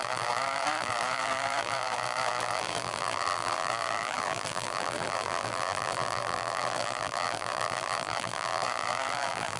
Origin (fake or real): fake